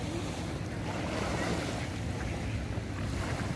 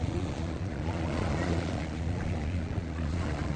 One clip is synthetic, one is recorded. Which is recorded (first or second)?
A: first